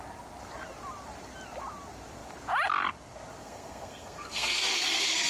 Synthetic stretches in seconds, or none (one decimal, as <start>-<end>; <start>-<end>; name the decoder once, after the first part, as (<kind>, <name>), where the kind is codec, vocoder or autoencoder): 3.4-5.3 (codec, SNAC)